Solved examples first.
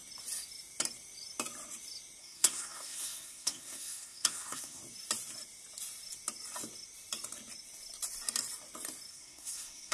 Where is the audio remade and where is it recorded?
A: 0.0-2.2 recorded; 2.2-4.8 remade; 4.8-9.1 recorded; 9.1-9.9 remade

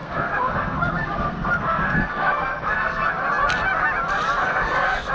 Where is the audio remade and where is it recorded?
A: 0.0-3.1 remade; 3.1-4.4 recorded; 4.4-5.1 remade

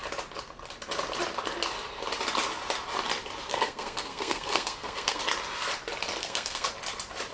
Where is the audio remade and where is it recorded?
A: 0.0-3.5 recorded; 3.5-5.2 remade; 5.2-6.2 recorded; 6.2-6.7 remade; 6.7-7.3 recorded

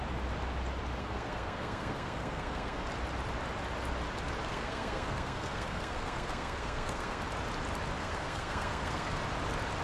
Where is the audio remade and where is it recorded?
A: 0.0-1.0 recorded; 1.0-2.8 remade; 2.8-4.5 recorded; 4.5-7.2 remade; 7.2-8.0 recorded; 8.0-9.2 remade; 9.2-9.8 recorded

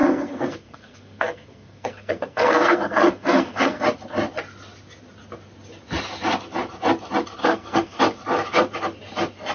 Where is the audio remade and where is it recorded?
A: 0.0-3.8 remade; 3.8-7.4 recorded; 7.4-8.0 remade; 8.0-9.5 recorded

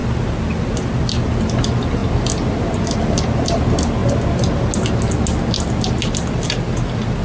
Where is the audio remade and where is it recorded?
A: 0.0-7.2 recorded